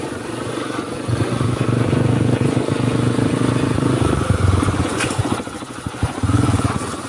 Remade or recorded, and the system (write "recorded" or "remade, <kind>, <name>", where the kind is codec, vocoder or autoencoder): remade, vocoder, Vocos